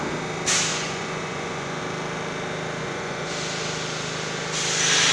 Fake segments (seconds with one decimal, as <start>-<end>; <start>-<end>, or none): 0.7-1.8; 2.8-3.3